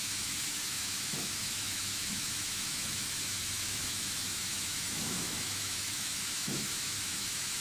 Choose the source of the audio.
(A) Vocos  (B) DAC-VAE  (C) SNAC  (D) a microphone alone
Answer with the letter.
B